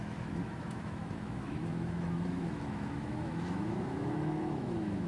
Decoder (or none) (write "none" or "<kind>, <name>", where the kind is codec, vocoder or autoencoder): autoencoder, DAC-VAE